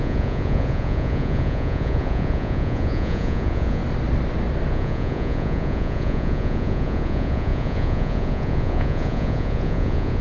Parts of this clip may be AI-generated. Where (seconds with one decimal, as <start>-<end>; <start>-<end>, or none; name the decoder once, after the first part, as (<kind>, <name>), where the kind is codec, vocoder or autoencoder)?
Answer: 0.0-3.8 (vocoder, Vocos); 4.7-10.2